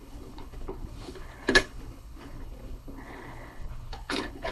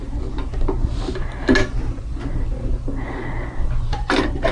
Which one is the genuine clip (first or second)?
second